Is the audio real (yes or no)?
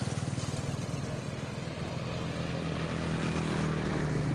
yes